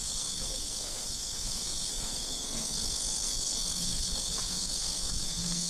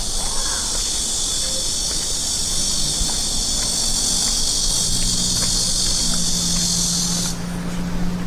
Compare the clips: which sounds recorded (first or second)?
second